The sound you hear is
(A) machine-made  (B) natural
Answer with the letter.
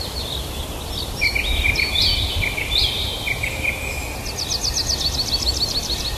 B